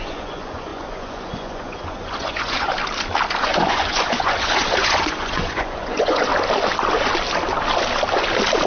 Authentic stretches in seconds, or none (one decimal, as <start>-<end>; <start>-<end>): 2.7-3.4; 6.3-8.7